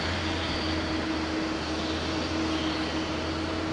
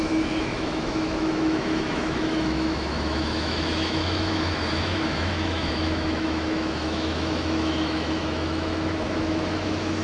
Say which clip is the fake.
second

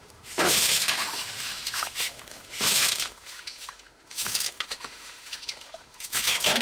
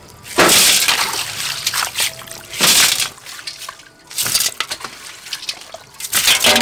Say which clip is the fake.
first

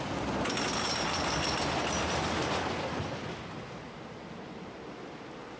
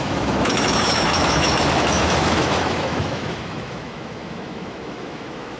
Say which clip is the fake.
second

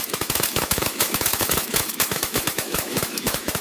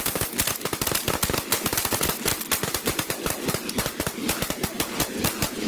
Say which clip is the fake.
first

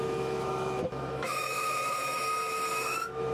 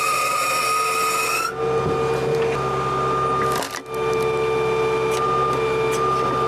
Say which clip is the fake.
first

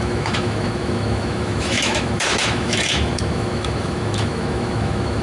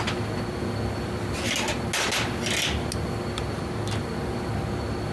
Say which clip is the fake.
first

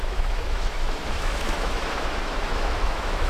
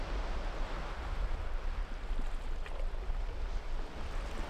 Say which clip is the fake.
first